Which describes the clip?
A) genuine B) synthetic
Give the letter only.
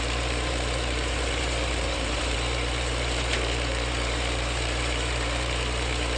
B